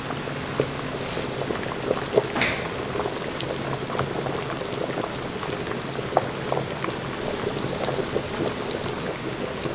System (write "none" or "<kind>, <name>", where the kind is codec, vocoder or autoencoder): none